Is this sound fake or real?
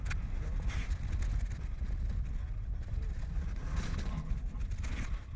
real